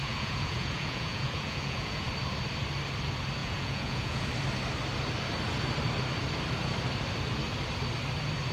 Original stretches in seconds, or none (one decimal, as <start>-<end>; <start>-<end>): 2.1-3.4; 4.3-8.5